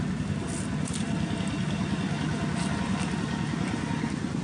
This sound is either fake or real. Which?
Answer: real